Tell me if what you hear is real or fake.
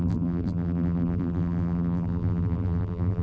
fake